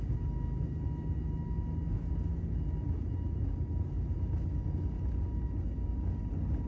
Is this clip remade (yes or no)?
no